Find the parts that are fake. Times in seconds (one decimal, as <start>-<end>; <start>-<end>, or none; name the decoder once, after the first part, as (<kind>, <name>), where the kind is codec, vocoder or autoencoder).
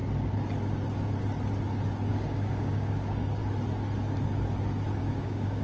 2.1-3.4 (codec, DAC); 5.0-5.6